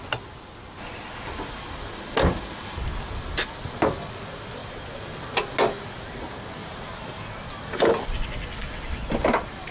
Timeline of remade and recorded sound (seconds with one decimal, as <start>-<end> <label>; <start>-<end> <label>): 0.0-4.6 recorded; 4.6-5.1 remade; 5.1-6.6 recorded; 6.6-7.9 remade; 7.9-9.7 recorded